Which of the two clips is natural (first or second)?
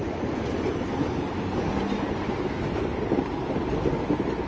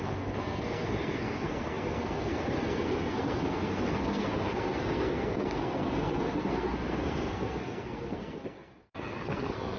first